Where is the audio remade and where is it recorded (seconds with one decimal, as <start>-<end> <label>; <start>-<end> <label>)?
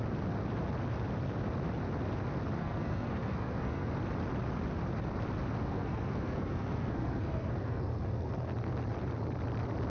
0.0-2.6 recorded; 2.6-3.9 remade; 3.9-5.6 recorded; 5.6-8.5 remade; 8.5-9.9 recorded